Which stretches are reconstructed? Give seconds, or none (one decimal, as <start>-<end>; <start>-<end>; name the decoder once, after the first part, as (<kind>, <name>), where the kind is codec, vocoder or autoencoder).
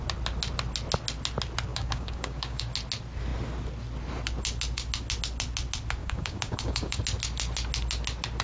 1.7-2.6 (codec, DAC); 6.0-7.0